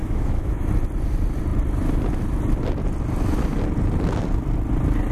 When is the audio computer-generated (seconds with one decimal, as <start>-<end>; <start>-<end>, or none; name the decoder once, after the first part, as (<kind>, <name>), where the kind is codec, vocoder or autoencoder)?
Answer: 0.0-0.7 (autoencoder, DAC-VAE)